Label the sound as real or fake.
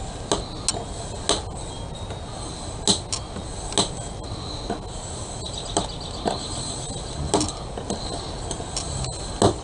real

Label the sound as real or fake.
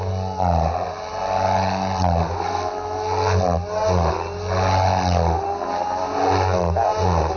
real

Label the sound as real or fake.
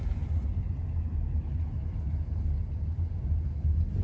real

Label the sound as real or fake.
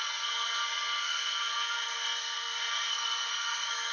fake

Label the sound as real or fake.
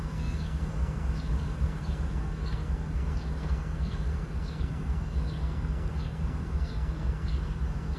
fake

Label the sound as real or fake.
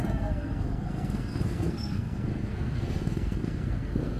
fake